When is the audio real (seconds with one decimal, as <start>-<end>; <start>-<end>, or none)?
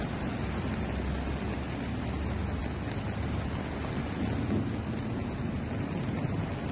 0.0-6.7